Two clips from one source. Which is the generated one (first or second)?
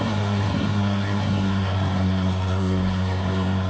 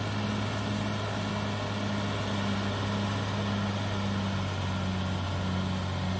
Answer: first